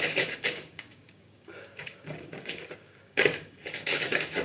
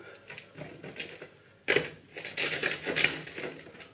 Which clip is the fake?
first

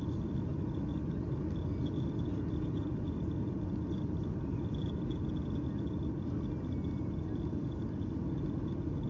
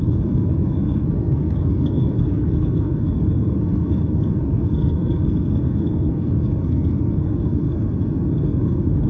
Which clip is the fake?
second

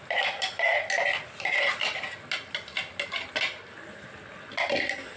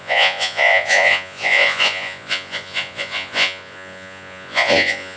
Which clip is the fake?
second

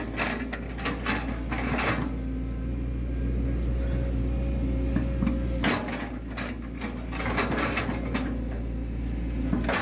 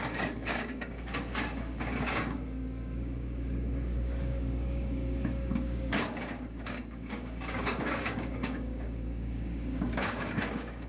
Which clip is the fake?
second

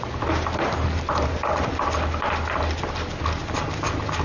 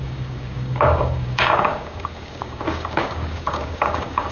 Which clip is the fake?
second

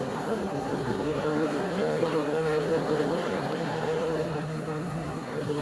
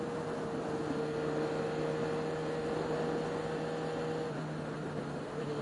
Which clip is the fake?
first